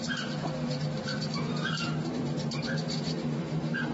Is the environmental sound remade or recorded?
remade